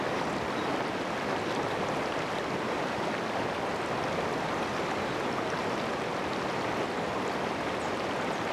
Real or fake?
real